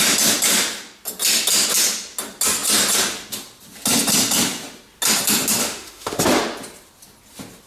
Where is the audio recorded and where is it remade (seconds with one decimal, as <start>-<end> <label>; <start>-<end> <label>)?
0.0-5.6 recorded; 5.6-6.2 remade; 6.2-7.7 recorded